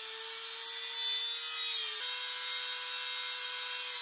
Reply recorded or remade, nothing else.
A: recorded